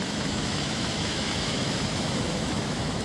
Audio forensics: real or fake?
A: fake